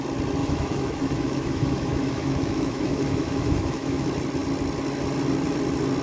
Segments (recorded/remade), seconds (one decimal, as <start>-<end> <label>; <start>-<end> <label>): 0.0-0.4 recorded; 0.4-4.0 remade; 4.0-6.0 recorded

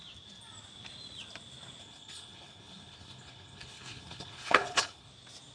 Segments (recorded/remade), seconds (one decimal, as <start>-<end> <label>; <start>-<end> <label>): 0.0-1.8 recorded; 1.8-5.1 remade; 5.1-5.5 recorded

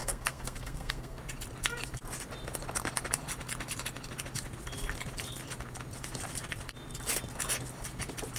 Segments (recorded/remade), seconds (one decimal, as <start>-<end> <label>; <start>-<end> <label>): 0.0-1.2 remade; 1.2-8.4 recorded

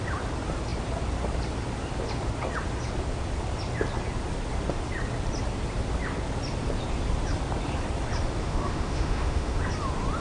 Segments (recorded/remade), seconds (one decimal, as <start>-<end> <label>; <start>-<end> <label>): 0.0-8.4 recorded; 8.4-9.6 remade; 9.6-10.2 recorded

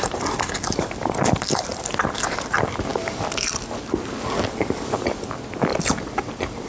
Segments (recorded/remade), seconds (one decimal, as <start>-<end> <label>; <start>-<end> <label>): 0.0-1.7 recorded; 1.7-2.5 remade; 2.5-2.9 recorded; 2.9-4.1 remade; 4.1-5.7 recorded; 5.7-6.7 remade